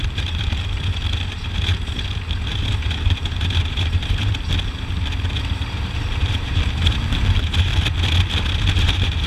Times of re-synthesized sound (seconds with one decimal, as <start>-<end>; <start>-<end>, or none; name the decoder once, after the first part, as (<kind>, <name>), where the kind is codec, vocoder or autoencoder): 0.0-0.5 (vocoder, BigVGAN v2); 2.5-4.3; 5.3-7.7; 8.8-9.3